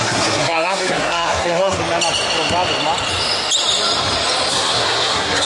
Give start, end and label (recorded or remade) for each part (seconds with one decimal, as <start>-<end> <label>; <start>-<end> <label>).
0.0-1.8 remade; 1.8-4.5 recorded; 4.5-5.5 remade

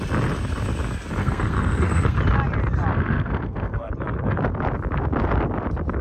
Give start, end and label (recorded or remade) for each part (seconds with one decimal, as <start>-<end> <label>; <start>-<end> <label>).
0.0-1.2 recorded; 1.2-2.2 remade; 2.2-2.9 recorded; 2.9-3.9 remade; 3.9-6.0 recorded

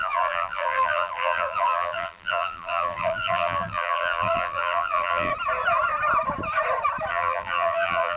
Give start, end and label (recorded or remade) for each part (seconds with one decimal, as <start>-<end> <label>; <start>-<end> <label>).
0.0-5.3 remade; 5.3-7.1 recorded; 7.1-8.2 remade

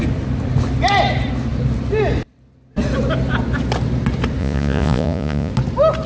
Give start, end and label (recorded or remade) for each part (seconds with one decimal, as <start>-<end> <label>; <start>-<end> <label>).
0.0-4.4 recorded; 4.4-5.5 remade; 5.5-6.1 recorded

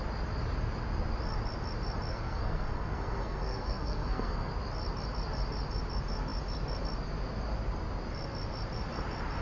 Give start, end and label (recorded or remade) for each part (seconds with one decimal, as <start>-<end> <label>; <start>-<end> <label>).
0.0-2.1 recorded; 2.1-4.5 remade; 4.5-9.4 recorded

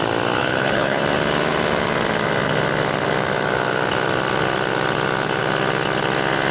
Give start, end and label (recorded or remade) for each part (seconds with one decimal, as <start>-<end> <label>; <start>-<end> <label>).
0.0-0.4 recorded; 0.4-1.0 remade; 1.0-6.5 recorded

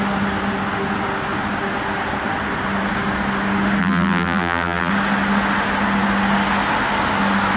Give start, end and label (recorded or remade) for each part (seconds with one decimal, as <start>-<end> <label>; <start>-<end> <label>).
0.0-3.8 recorded; 3.8-4.9 remade; 4.9-7.6 recorded

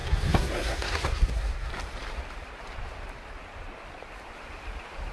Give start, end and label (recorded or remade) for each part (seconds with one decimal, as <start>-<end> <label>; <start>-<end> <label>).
0.0-1.7 remade; 1.7-5.1 recorded